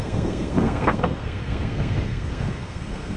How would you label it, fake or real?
fake